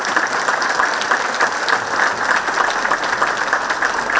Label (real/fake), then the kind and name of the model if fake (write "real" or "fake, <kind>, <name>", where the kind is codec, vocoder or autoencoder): real